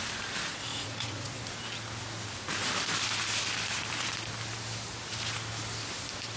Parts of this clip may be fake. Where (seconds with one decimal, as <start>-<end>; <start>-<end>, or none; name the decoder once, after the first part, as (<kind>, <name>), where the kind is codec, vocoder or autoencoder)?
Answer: 0.7-1.4 (vocoder, Vocos)